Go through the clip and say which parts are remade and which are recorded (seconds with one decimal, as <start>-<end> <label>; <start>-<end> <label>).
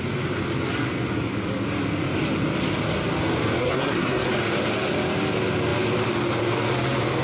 0.0-3.6 recorded; 3.6-4.3 remade; 4.3-7.2 recorded